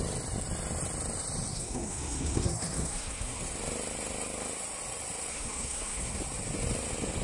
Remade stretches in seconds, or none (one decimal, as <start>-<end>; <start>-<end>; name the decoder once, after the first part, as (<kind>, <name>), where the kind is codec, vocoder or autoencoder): 1.5-3.4 (codec, SNAC); 5.3-6.2